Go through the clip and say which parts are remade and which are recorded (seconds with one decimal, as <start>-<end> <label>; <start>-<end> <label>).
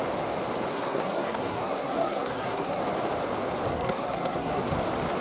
0.0-0.7 recorded; 0.7-2.8 remade; 2.8-3.7 recorded; 3.7-4.6 remade; 4.6-5.2 recorded